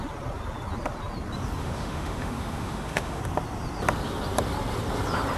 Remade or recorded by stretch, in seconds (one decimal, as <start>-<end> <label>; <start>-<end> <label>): 0.0-1.6 recorded; 1.6-3.2 remade; 3.2-5.4 recorded